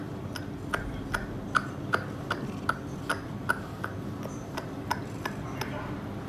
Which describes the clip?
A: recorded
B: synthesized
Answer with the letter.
A